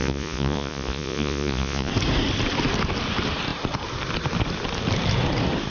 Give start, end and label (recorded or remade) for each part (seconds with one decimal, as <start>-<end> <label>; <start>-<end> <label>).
0.0-1.9 remade; 1.9-5.7 recorded